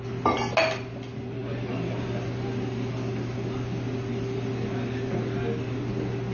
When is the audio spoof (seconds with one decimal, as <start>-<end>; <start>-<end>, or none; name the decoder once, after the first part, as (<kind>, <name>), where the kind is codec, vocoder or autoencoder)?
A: none